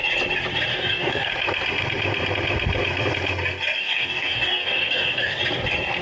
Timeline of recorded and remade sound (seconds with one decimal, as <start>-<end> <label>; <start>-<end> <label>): 0.0-0.7 recorded; 0.7-1.3 remade; 1.3-3.8 recorded; 3.8-5.4 remade; 5.4-6.0 recorded